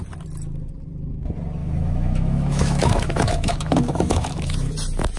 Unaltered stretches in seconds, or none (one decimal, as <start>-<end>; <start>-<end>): 0.0-1.6; 4.7-5.2